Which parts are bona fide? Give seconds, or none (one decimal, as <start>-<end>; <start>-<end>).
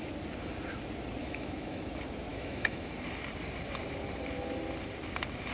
0.0-1.2; 1.8-2.3; 2.9-5.5